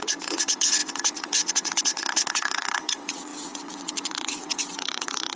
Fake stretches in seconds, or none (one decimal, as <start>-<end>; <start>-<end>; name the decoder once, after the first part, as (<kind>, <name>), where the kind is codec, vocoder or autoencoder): 0.0-5.4 (vocoder, WaveNeXt)